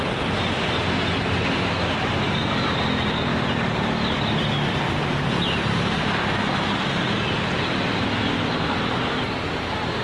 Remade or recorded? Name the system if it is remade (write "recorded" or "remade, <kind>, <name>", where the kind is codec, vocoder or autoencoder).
recorded